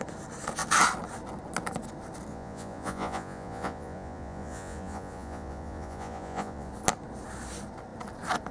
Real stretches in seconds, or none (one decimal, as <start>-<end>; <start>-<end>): 0.0-2.3; 6.7-8.5